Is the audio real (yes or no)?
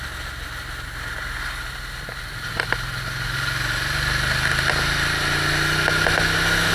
yes